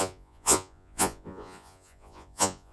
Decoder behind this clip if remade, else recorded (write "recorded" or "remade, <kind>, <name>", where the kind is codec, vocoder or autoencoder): remade, vocoder, Vocos